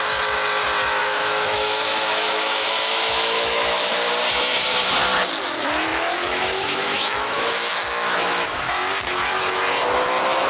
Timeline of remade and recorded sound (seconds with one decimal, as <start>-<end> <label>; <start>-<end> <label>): 0.0-1.0 recorded; 1.0-4.1 remade; 4.1-5.9 recorded; 5.9-8.7 remade; 8.7-10.5 recorded

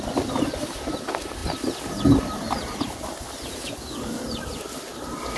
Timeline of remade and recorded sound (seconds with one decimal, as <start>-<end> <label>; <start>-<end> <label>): 0.0-5.4 recorded

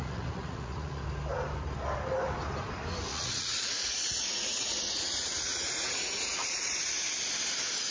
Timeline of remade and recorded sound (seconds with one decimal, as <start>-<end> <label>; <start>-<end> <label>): 0.0-1.0 remade; 1.0-3.1 recorded; 3.1-6.6 remade; 6.6-7.9 recorded

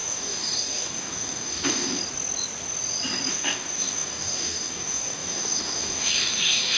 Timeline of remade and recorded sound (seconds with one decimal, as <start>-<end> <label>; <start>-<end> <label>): 0.0-2.0 remade; 2.0-3.3 recorded; 3.3-6.8 remade

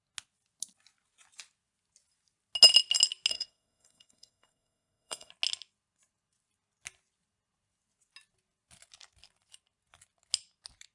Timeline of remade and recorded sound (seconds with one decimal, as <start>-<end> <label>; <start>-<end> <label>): 0.0-3.3 recorded; 3.3-5.3 remade; 5.3-10.9 recorded